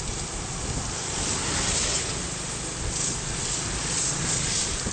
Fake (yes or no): no